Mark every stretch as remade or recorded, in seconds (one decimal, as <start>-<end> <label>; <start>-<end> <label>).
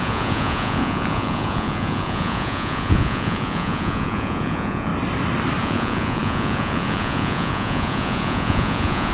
0.0-4.9 remade; 4.9-5.6 recorded; 5.6-9.1 remade